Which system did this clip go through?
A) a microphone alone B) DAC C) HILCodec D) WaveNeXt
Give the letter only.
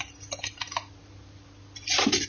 A